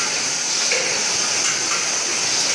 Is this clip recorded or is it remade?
recorded